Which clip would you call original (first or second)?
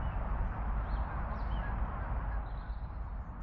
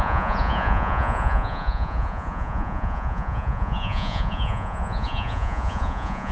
first